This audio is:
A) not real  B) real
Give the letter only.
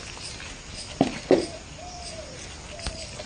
B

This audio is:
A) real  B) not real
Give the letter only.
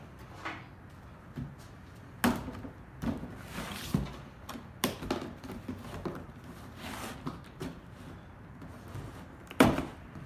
A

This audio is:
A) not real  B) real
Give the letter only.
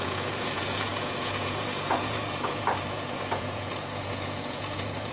A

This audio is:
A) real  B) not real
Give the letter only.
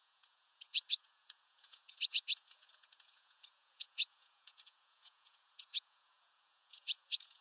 B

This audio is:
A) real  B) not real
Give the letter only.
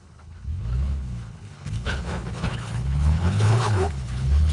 B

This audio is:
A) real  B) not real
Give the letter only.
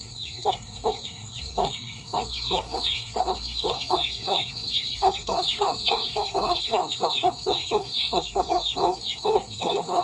B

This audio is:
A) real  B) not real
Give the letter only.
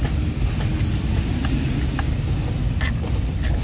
A